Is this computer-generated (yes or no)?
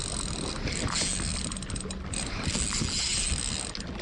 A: no